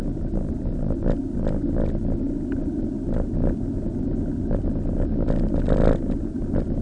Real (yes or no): yes